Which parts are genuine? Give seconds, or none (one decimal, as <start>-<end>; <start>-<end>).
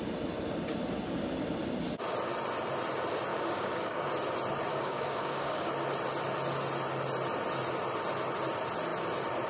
0.0-3.3; 4.1-4.7; 5.7-9.5